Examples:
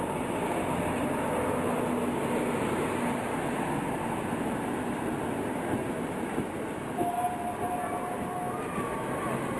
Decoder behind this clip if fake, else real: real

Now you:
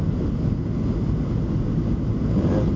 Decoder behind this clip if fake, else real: real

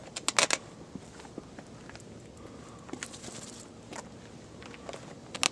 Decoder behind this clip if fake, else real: real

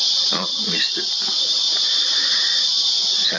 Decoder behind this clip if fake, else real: fake, vocoder, BigVGAN v2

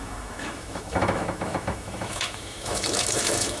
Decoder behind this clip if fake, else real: fake, autoencoder, DAC-VAE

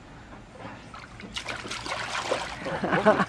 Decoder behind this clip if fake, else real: real